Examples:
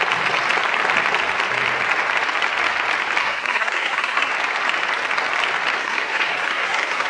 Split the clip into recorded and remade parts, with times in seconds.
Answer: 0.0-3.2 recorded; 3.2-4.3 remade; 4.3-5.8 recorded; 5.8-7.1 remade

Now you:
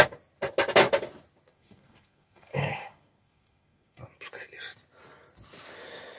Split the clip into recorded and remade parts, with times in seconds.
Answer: 0.0-1.5 recorded; 1.5-4.0 remade; 4.0-6.2 recorded

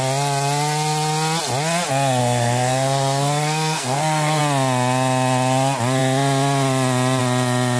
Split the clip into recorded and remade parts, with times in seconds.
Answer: 0.0-2.2 recorded; 2.2-4.4 remade; 4.4-7.8 recorded